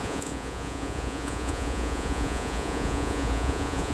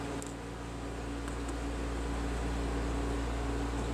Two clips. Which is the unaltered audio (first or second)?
second